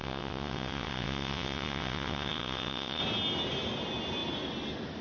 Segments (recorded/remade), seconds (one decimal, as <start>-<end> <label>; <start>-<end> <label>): 0.0-3.0 remade; 3.0-5.0 recorded